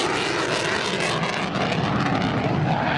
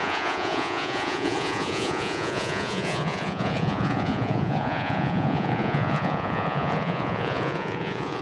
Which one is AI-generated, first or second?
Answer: second